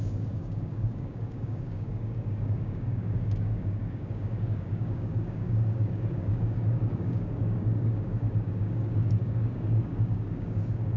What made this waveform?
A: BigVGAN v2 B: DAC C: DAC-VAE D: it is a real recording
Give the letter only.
B